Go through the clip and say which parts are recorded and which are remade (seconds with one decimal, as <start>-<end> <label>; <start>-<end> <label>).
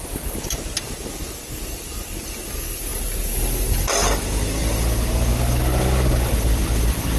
0.0-7.2 recorded